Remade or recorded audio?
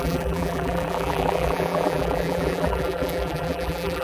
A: remade